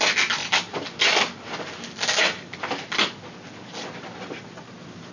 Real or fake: real